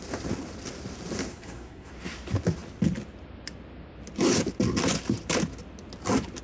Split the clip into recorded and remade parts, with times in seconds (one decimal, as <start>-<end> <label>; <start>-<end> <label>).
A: 0.0-1.3 recorded; 1.3-1.9 remade; 1.9-6.4 recorded